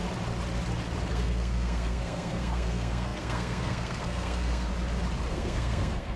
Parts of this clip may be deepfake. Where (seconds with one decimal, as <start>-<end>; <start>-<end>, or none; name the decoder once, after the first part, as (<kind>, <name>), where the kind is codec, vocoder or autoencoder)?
1.1-4.7 (codec, SNAC); 5.3-6.2